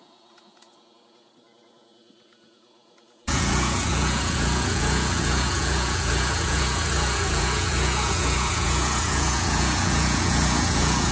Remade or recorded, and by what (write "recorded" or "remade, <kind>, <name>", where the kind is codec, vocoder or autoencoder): remade, vocoder, Vocos